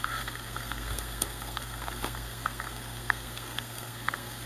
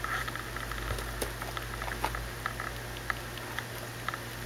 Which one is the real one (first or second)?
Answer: second